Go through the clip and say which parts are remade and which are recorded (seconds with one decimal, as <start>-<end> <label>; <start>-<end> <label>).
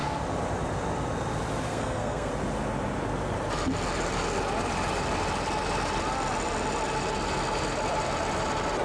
0.0-1.7 recorded; 1.7-2.3 remade; 2.3-8.8 recorded